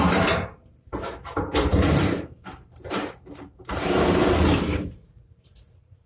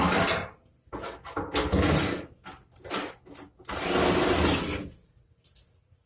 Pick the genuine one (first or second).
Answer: second